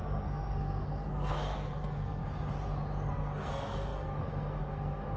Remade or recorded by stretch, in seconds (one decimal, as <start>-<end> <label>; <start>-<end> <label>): 0.0-2.2 remade; 2.2-3.1 recorded; 3.1-5.2 remade